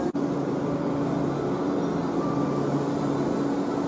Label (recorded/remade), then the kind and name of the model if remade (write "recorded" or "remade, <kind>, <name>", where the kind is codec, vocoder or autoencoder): recorded